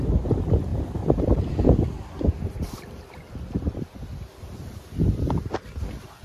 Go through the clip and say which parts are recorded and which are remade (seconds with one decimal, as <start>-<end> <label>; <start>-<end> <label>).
0.0-0.7 recorded; 0.7-1.2 remade; 1.2-4.3 recorded; 4.3-5.4 remade; 5.4-6.2 recorded